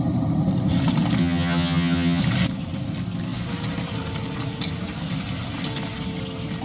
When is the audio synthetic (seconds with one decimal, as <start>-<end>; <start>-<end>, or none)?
1.2-2.2